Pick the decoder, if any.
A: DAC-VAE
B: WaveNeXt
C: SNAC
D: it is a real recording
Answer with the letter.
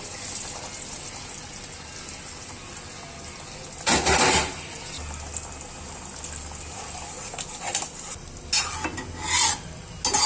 D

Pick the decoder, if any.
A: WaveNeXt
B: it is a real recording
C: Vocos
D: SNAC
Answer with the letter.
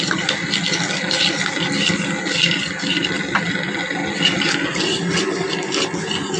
B